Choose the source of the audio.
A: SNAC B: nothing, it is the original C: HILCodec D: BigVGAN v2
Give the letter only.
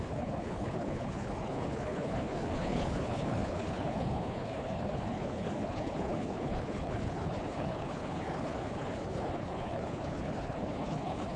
C